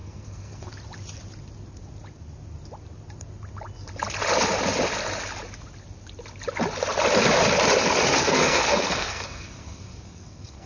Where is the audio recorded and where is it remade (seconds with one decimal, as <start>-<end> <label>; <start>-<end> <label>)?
0.0-0.7 remade; 0.7-8.2 recorded; 8.2-10.7 remade